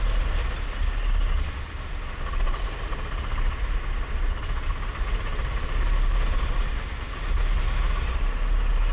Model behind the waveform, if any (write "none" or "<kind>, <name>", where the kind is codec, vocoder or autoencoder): none